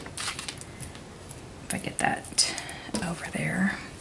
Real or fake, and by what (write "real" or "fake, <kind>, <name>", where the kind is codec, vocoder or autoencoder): real